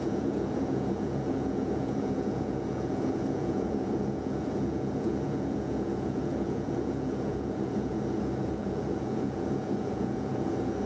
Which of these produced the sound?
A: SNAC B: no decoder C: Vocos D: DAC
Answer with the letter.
C